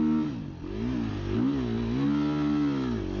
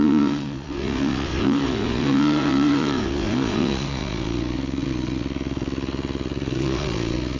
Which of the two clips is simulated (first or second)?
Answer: second